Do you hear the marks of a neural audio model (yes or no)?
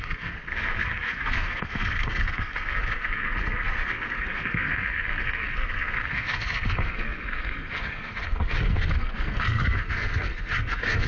yes